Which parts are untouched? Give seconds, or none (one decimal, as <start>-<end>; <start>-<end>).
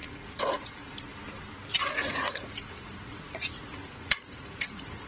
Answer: 1.0-1.7